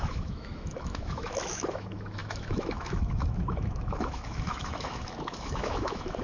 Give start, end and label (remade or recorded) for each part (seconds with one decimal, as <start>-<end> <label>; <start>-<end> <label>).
0.0-6.2 remade